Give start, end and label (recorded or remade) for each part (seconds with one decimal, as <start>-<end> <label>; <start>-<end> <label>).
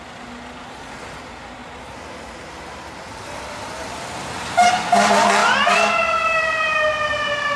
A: 0.0-1.6 recorded; 1.6-4.5 remade; 4.5-5.4 recorded; 5.4-6.8 remade; 6.8-7.6 recorded